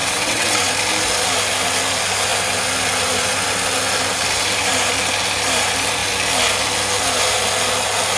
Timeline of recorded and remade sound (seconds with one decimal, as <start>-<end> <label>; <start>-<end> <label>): 0.0-0.7 remade; 0.7-8.2 recorded

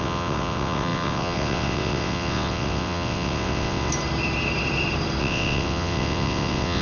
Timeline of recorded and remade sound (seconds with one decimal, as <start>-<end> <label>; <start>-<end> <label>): 0.0-3.9 remade; 3.9-5.2 recorded; 5.2-6.8 remade

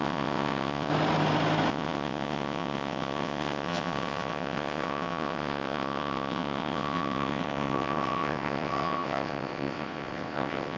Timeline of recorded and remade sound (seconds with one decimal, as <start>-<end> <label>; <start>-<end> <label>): 0.0-0.9 remade; 0.9-1.7 recorded; 1.7-10.8 remade

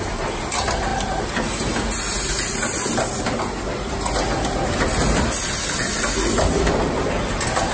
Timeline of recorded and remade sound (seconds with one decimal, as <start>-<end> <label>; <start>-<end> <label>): 0.0-7.7 recorded

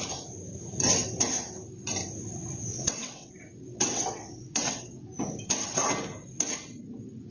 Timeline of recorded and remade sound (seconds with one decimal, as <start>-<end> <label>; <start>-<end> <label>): 0.0-2.7 recorded; 2.7-3.3 remade; 3.3-3.7 recorded; 3.7-5.1 remade; 5.1-7.3 recorded